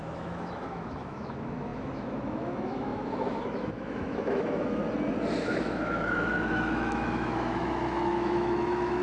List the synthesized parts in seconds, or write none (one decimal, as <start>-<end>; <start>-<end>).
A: 0.0-4.8; 5.4-9.0